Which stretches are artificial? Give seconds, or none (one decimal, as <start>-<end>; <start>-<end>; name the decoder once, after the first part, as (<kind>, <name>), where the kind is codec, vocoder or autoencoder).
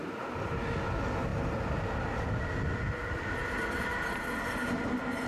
none